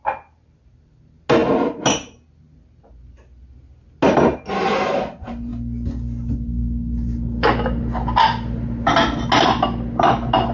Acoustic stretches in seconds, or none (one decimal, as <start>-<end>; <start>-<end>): 0.0-10.5